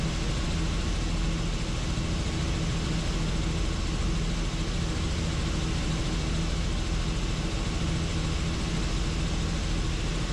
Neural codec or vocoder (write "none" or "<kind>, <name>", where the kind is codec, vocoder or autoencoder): none